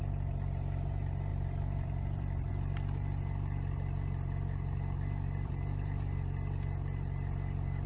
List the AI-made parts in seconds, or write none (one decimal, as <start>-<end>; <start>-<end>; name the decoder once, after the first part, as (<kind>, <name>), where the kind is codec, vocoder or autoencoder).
1.3-2.5 (vocoder, BigVGAN v2)